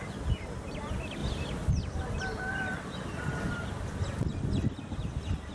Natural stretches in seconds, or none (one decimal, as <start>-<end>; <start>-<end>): 0.0-5.5